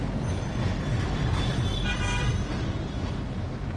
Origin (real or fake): real